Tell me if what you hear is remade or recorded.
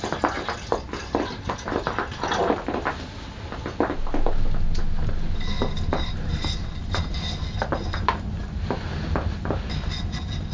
recorded